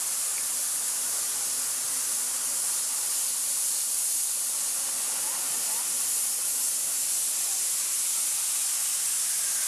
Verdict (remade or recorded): recorded